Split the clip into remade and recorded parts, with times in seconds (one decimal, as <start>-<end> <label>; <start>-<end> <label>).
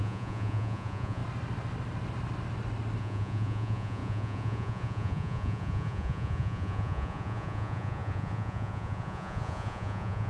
0.0-1.2 remade; 1.2-3.0 recorded; 3.0-10.3 remade